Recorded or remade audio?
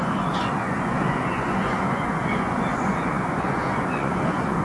remade